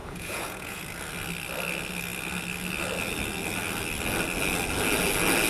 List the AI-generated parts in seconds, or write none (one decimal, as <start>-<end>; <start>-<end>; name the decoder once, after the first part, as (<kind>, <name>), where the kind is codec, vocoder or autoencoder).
0.0-0.8 (vocoder, Vocos)

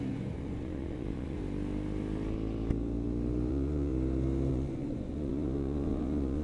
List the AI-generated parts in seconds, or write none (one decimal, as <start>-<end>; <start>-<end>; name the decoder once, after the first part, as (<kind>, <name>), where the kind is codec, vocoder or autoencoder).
0.0-1.4 (vocoder, Vocos); 3.5-3.9; 4.5-6.4

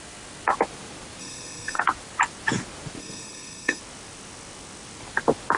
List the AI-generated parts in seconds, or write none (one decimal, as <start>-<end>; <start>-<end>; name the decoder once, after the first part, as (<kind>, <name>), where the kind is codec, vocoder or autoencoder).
1.2-1.8 (codec, SNAC); 3.0-3.8

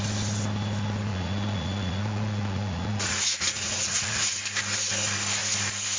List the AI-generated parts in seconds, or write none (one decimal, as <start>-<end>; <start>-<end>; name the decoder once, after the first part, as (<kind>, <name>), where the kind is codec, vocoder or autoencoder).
1.1-4.4 (vocoder, Vocos)

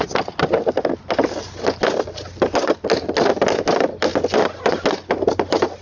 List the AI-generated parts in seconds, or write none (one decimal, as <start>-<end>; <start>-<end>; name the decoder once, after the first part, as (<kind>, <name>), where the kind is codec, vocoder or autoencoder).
none